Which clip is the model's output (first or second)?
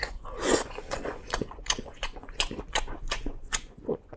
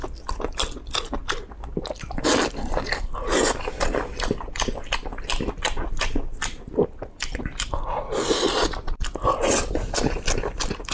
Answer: first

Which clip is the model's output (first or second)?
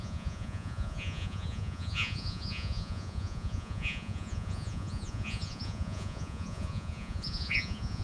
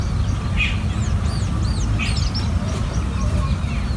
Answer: first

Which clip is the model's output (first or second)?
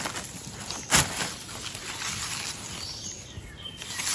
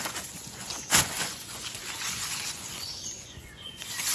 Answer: second